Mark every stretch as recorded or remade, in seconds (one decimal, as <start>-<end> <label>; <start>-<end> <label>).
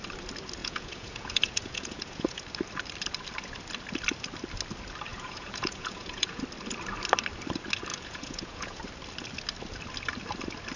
0.0-0.6 recorded; 0.6-2.4 remade; 2.4-5.1 recorded; 5.1-6.4 remade; 6.4-7.9 recorded; 7.9-8.8 remade; 8.8-10.8 recorded